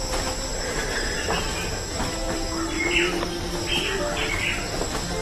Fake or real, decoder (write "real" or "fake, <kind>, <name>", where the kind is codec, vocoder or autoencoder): real